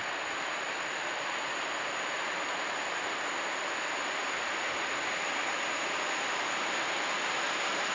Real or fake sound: real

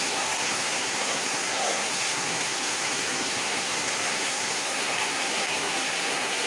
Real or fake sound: fake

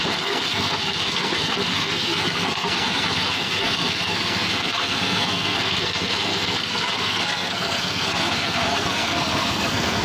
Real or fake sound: fake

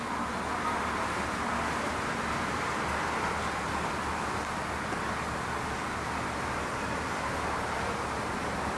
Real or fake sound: real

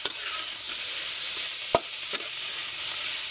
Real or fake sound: real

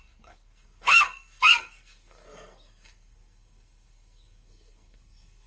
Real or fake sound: fake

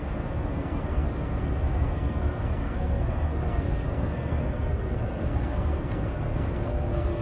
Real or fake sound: fake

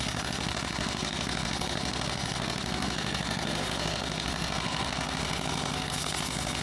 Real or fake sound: fake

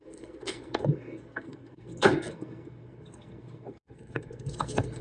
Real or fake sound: fake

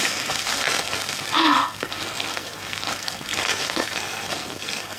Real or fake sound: fake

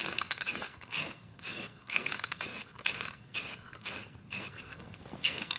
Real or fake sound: fake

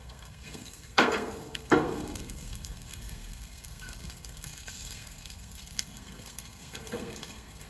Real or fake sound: fake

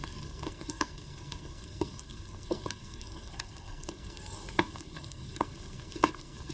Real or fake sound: fake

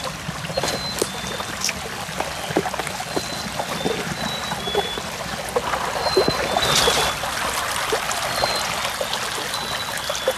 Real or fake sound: real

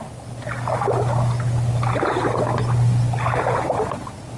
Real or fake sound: real